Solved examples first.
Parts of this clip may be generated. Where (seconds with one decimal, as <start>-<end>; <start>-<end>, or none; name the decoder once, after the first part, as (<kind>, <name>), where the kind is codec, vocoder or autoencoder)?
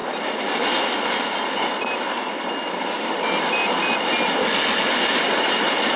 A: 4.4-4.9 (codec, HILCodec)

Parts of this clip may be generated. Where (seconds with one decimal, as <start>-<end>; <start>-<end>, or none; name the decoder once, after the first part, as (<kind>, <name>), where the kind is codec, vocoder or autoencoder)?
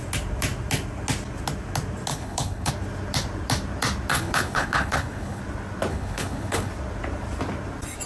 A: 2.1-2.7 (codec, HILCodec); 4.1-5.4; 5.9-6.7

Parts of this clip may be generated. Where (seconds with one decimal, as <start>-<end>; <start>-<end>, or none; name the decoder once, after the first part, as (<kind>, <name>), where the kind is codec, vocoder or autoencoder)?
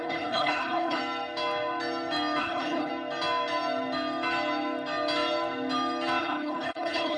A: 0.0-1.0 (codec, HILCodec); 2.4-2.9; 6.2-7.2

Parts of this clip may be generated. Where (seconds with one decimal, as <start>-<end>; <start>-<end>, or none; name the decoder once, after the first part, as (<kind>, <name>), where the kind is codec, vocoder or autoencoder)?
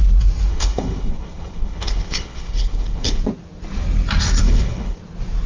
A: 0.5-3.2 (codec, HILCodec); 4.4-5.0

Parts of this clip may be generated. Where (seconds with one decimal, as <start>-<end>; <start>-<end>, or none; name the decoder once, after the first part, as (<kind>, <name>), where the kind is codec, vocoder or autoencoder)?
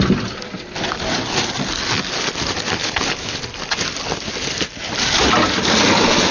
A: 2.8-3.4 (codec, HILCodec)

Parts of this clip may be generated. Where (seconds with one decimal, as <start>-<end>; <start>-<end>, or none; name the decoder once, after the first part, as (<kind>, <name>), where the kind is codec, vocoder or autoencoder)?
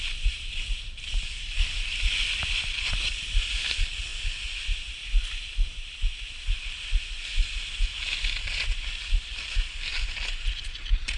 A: none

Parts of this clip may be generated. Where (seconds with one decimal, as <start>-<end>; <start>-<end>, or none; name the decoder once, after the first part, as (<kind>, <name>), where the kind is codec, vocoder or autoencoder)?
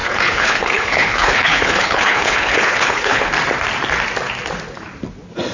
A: 0.0-3.3 (codec, HILCodec)